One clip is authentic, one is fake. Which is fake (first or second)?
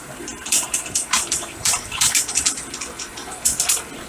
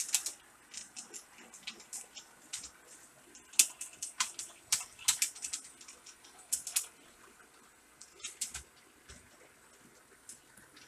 first